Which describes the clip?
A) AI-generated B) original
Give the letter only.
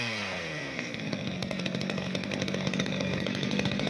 A